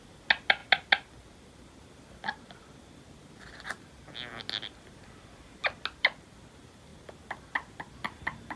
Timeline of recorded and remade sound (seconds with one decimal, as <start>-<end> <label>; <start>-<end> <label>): 0.0-8.6 recorded

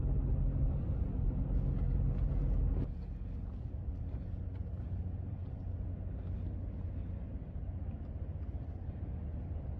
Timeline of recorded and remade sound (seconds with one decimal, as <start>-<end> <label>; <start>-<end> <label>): 0.0-9.8 recorded

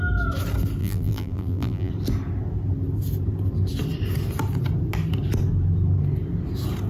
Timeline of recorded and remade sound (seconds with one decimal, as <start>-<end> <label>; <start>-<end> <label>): 0.0-0.8 recorded; 0.8-1.9 remade; 1.9-6.9 recorded

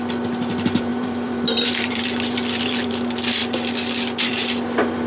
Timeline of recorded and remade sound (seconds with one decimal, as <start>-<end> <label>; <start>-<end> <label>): 0.0-0.9 recorded; 0.9-2.9 remade; 2.9-5.1 recorded

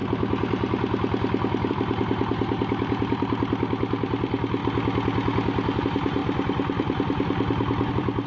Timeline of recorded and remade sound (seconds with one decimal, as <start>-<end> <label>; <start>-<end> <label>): 0.0-4.6 remade; 4.6-5.8 recorded; 5.8-8.3 remade

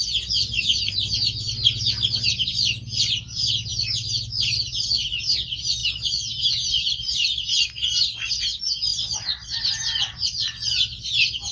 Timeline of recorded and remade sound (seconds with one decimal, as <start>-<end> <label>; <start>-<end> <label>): 0.0-11.5 recorded

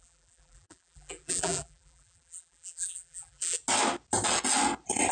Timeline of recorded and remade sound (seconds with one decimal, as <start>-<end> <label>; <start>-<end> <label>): 0.0-3.6 remade; 3.6-5.1 recorded

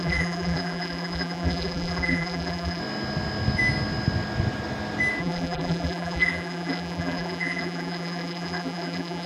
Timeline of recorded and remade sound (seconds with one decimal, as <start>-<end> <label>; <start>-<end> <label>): 0.0-2.8 remade; 2.8-5.2 recorded; 5.2-9.3 remade